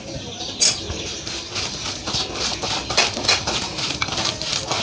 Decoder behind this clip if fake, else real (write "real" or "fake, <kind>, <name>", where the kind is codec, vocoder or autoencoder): real